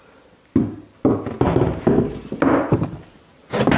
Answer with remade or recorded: recorded